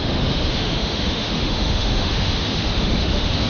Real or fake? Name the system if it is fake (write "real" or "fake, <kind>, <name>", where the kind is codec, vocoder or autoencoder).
fake, autoencoder, DAC-VAE